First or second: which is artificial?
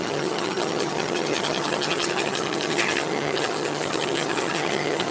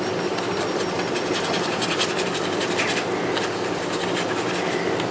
first